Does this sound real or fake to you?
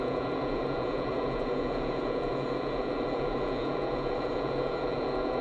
fake